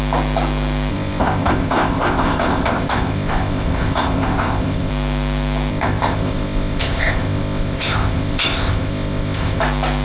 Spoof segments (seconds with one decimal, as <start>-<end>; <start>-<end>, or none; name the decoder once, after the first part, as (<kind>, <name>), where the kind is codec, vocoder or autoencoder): 0.9-4.9 (codec, ZipCodec); 5.7-9.6